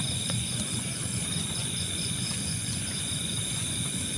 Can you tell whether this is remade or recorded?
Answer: remade